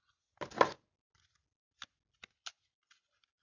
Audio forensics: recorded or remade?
recorded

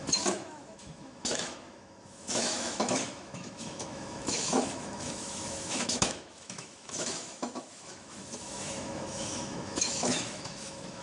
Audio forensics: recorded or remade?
remade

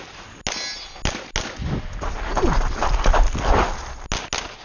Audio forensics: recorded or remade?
recorded